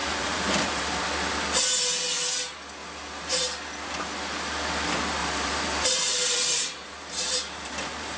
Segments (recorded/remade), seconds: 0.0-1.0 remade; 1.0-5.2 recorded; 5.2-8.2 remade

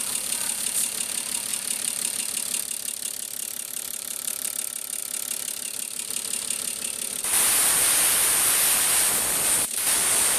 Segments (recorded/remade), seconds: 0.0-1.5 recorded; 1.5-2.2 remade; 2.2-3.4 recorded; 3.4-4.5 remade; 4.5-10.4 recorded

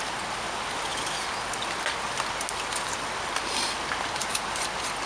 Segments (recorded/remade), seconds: 0.0-5.1 recorded

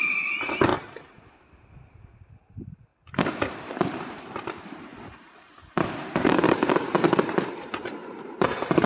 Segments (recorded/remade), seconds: 0.0-0.7 remade; 0.7-1.7 recorded; 1.7-2.9 remade; 2.9-3.4 recorded; 3.4-8.9 remade